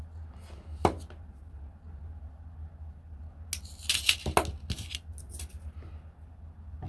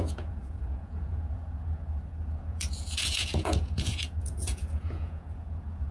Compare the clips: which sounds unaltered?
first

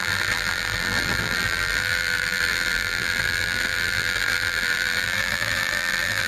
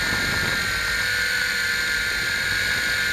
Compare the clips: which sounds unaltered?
second